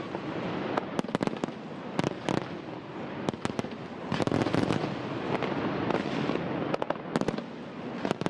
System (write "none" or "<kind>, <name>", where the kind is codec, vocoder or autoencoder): none